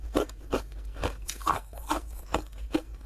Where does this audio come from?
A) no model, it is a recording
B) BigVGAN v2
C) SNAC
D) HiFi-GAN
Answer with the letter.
C